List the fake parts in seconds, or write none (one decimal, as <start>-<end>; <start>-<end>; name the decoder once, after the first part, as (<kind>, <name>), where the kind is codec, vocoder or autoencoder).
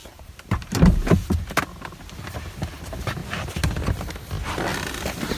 0.0-1.5 (vocoder, BigVGAN v2)